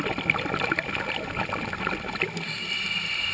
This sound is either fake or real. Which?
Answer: real